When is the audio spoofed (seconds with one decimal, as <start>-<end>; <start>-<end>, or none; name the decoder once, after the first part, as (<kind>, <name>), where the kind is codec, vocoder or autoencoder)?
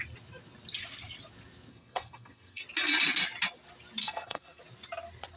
1.7-2.6 (codec, SNAC); 4.0-4.6